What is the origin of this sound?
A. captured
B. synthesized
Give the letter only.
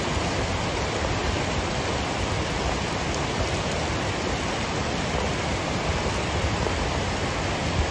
A